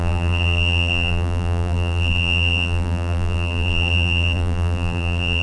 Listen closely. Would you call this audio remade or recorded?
remade